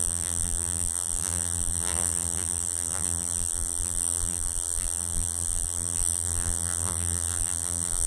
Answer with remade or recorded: remade